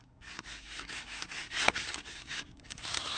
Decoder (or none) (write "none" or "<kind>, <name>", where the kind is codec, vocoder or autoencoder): codec, SNAC